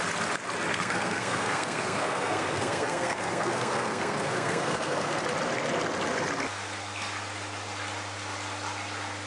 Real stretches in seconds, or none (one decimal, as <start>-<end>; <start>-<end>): 0.0-0.7; 5.2-9.3

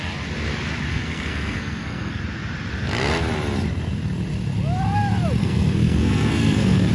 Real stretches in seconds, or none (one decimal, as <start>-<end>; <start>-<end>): 0.0-0.9; 2.2-5.4

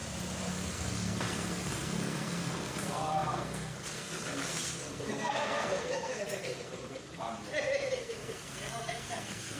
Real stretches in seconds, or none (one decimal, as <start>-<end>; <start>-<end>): 0.0-0.5; 7.3-8.0

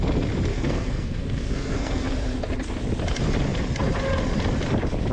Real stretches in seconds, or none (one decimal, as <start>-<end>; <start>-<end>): 0.0-0.5; 2.1-5.1